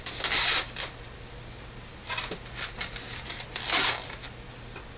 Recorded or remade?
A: recorded